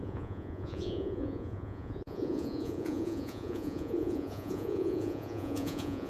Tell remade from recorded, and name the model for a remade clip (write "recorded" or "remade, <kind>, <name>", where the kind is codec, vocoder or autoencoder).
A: remade, vocoder, Vocos